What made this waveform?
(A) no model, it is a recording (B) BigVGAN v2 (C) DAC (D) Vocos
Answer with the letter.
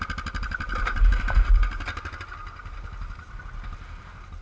A